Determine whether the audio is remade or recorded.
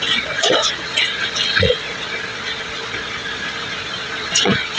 remade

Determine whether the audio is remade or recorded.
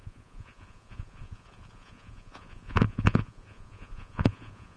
remade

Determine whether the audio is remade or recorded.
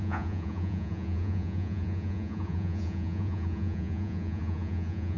remade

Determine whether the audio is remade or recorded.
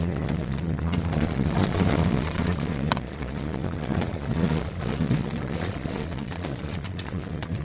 remade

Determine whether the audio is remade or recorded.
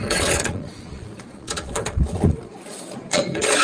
remade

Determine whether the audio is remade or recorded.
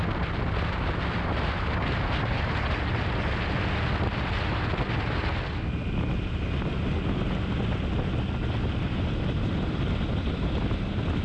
recorded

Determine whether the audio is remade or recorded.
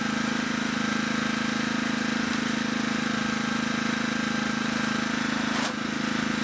recorded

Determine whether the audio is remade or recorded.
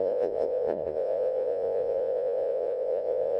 remade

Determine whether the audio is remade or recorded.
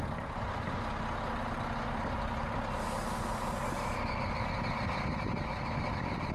recorded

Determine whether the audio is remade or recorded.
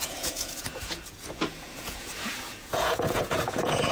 remade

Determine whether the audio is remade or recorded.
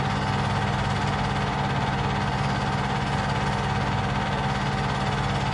recorded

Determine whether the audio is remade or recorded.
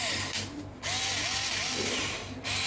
recorded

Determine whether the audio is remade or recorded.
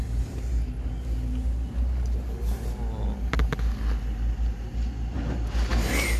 recorded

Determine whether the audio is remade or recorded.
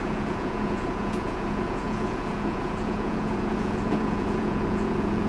remade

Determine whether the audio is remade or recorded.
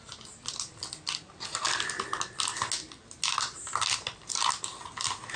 recorded